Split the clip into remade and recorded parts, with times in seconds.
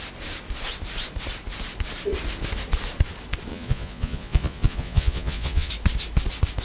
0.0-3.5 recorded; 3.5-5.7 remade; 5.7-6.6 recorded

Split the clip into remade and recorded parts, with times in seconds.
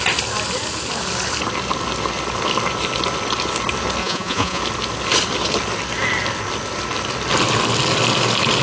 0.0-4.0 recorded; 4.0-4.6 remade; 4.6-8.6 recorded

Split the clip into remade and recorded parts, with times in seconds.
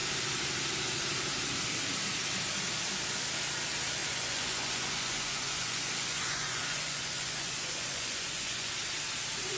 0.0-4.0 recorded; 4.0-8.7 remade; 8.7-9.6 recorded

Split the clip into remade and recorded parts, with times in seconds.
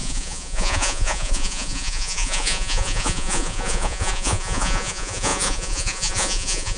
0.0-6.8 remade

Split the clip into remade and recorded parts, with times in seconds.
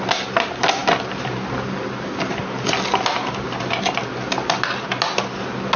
0.0-5.8 recorded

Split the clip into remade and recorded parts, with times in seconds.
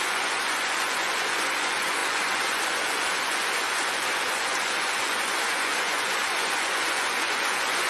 0.0-7.9 remade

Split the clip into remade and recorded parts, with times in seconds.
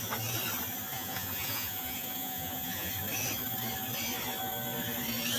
0.0-0.9 recorded; 0.9-2.9 remade; 2.9-5.4 recorded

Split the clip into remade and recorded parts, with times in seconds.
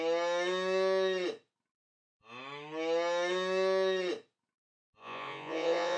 0.0-5.0 recorded; 5.0-6.0 remade